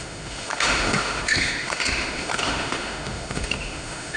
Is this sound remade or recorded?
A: remade